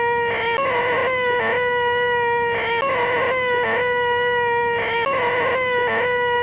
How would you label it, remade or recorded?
recorded